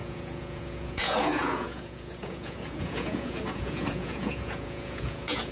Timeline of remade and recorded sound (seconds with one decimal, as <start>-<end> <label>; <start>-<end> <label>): 0.0-5.5 remade